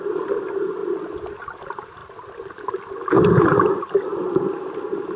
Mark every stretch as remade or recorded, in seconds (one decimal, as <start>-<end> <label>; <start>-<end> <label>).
0.0-5.2 recorded